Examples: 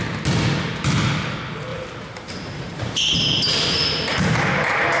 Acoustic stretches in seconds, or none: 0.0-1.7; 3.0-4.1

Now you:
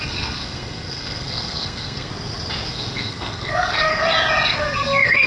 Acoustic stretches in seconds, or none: 2.1-2.7; 3.9-4.6

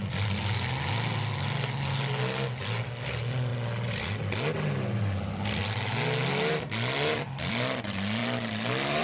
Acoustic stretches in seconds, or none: 0.0-9.0

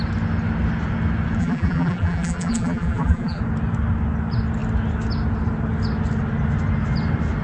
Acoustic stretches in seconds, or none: 0.0-1.4; 3.4-7.4

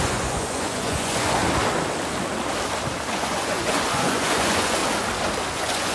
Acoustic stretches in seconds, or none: 1.4-3.1; 4.8-5.5

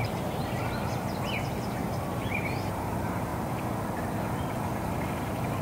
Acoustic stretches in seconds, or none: 0.4-1.5; 3.3-4.8